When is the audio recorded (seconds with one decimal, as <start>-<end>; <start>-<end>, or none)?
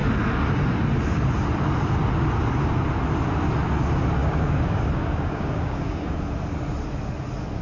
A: 0.0-4.2; 6.2-7.6